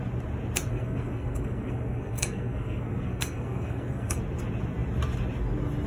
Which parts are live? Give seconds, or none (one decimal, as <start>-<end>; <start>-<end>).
0.0-0.7; 4.2-5.9